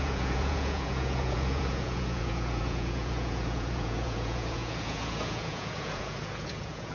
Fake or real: fake